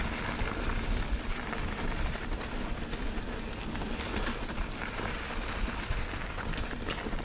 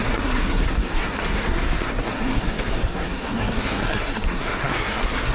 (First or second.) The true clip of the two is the first